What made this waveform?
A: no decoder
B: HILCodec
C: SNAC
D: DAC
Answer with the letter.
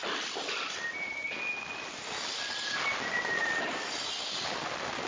A